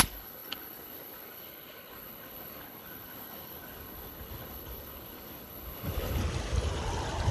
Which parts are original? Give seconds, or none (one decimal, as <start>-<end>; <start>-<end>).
6.2-7.3